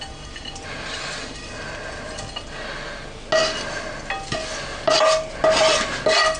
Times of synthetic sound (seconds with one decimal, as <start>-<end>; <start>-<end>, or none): none

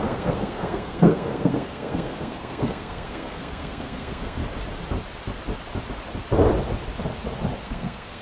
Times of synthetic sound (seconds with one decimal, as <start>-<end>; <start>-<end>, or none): 0.0-4.4; 7.6-8.2

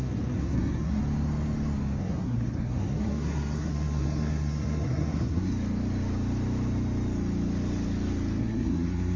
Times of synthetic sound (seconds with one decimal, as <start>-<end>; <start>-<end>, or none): 0.0-1.0; 2.0-5.5; 8.4-9.2

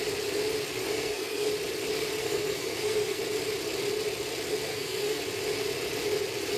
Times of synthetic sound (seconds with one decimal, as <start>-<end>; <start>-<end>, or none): 0.8-1.5; 2.2-3.2; 4.7-5.2

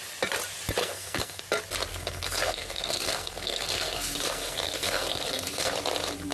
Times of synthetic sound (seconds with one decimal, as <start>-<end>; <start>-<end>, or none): 0.8-1.4; 1.9-5.7